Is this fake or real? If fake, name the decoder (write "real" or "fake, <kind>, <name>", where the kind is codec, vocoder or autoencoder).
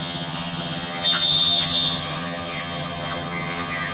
fake, vocoder, HiFi-GAN